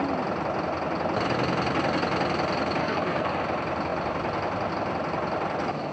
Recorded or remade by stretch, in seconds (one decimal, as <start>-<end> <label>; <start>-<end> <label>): 0.0-2.8 recorded; 2.8-3.4 remade; 3.4-5.9 recorded